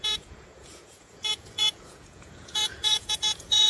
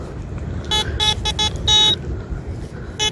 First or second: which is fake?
first